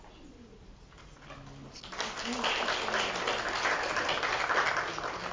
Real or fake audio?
real